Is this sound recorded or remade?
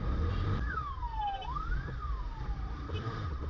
remade